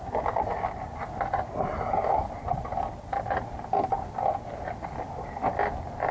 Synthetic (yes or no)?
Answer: no